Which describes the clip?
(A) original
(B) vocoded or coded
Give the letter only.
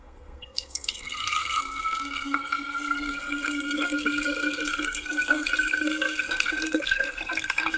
B